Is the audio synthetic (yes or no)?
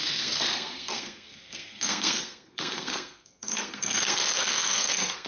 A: yes